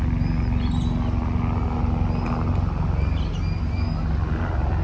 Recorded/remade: recorded